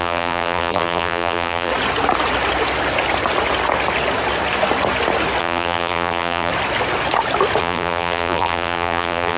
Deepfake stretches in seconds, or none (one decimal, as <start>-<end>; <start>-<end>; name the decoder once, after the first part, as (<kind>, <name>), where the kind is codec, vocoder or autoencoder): 0.0-1.7 (vocoder, BigVGAN v2); 5.4-6.5; 7.6-9.4